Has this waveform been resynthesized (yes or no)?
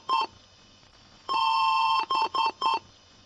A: yes